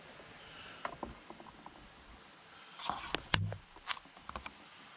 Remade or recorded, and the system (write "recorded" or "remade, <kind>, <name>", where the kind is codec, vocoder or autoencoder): recorded